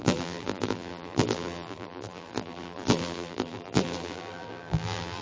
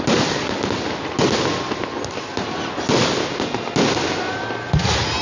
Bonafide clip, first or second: second